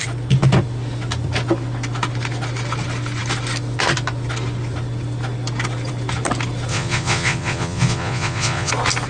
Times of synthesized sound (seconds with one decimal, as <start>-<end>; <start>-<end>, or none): 6.7-8.7

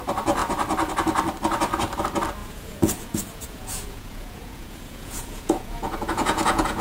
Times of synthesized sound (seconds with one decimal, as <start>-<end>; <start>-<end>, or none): 2.4-6.8

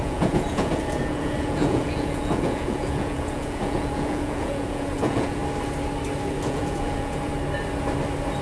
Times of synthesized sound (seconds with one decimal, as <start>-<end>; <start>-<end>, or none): 0.0-5.4; 6.4-7.3

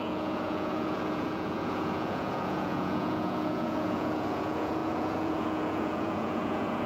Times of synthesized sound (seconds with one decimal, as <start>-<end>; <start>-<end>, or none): 0.0-6.9

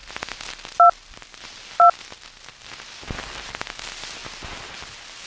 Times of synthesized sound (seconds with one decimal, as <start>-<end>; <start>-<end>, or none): none